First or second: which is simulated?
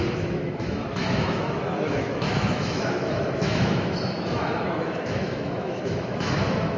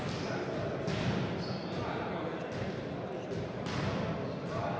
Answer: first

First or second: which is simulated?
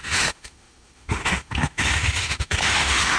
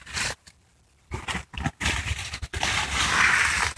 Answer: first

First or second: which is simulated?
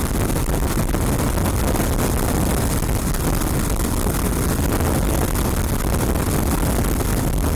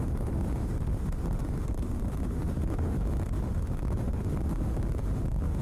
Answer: second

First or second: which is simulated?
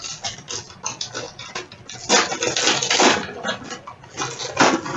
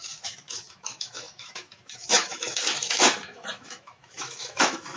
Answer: second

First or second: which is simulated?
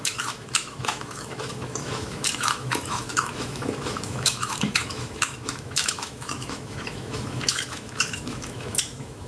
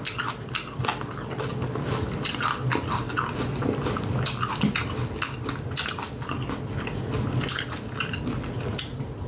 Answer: first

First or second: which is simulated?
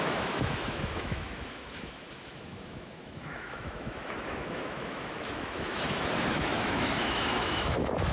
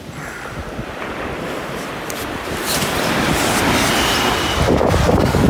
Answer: first